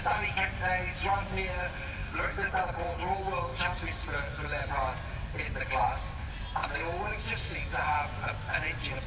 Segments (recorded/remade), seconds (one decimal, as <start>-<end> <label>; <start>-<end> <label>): 0.0-2.0 recorded; 2.0-2.6 remade; 2.6-6.6 recorded; 6.6-7.2 remade; 7.2-9.1 recorded